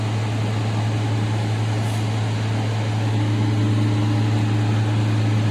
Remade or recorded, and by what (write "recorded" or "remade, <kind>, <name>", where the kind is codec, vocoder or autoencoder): recorded